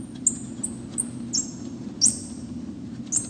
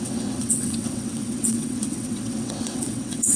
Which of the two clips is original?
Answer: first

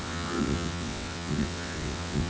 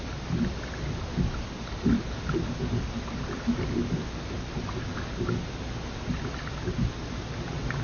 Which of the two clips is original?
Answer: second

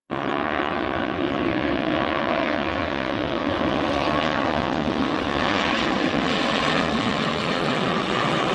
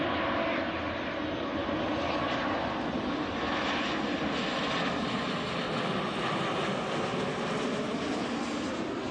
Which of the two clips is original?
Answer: second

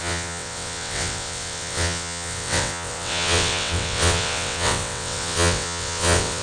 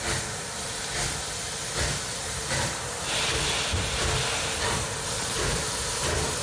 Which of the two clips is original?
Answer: second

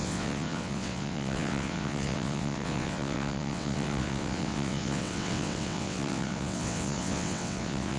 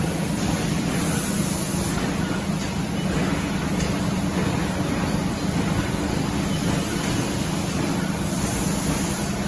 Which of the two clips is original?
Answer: second